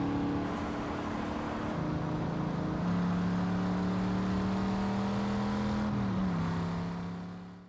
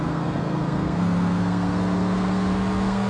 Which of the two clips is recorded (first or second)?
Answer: first